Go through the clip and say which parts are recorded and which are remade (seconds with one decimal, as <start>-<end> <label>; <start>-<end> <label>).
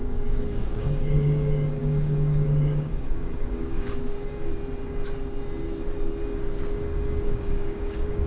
0.0-3.9 remade; 3.9-7.2 recorded; 7.2-8.3 remade